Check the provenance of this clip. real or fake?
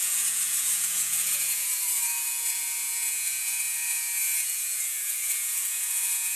fake